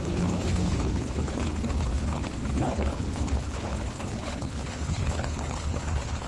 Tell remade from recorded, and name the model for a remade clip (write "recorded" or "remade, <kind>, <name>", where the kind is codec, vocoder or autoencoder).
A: remade, codec, HILCodec